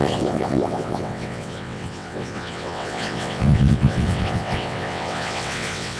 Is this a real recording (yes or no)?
no